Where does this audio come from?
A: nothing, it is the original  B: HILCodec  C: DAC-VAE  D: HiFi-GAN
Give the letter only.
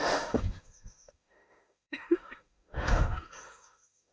C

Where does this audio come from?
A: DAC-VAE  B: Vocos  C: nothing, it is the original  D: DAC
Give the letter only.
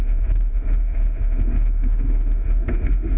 A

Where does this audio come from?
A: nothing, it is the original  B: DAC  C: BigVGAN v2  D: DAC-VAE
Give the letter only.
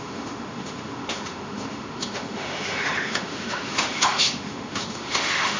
D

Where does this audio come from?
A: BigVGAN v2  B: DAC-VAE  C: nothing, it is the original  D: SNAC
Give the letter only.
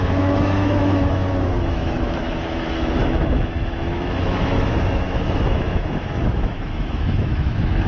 B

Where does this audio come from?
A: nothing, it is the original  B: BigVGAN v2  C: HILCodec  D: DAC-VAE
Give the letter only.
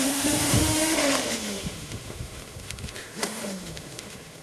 D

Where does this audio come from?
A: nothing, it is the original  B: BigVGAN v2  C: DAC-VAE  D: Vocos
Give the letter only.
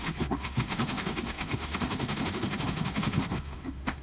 C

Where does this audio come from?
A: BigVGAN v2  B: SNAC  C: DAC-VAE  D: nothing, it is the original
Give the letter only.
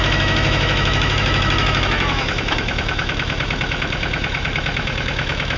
C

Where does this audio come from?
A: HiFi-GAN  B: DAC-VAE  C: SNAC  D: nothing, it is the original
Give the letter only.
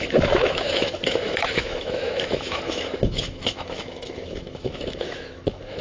B